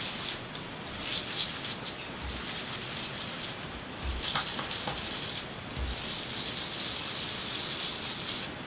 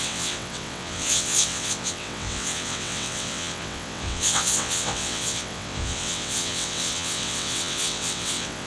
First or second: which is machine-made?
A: second